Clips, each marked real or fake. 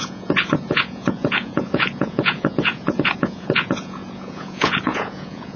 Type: fake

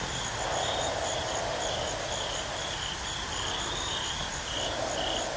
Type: real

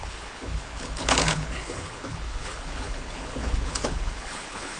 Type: fake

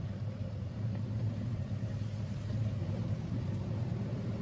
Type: fake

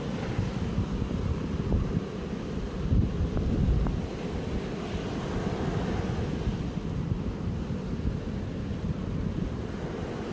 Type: real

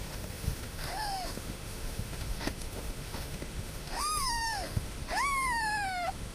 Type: fake